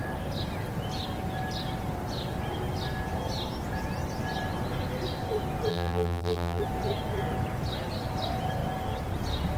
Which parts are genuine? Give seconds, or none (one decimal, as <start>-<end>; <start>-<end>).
0.0-5.7; 6.6-9.6